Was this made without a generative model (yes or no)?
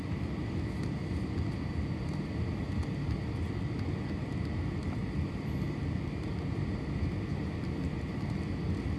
yes